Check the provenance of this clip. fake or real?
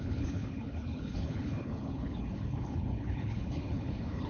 fake